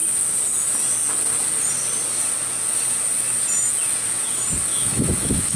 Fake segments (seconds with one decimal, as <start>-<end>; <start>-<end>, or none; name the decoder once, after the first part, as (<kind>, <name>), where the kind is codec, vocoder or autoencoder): 4.7-5.6 (autoencoder, DAC-VAE)